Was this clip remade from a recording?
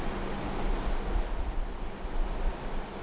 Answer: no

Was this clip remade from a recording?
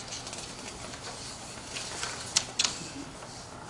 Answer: no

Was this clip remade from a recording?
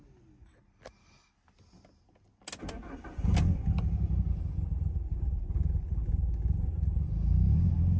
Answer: no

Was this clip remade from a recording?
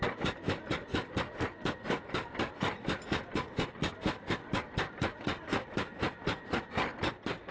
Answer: no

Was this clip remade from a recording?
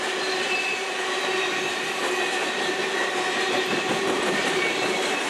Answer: no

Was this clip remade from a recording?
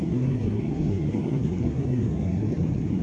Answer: yes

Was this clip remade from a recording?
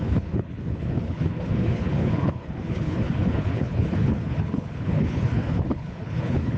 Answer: yes